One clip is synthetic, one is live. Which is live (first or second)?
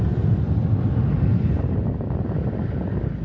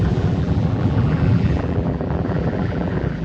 first